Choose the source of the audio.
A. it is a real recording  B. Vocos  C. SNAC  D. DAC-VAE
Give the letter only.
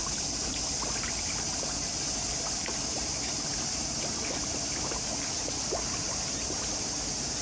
A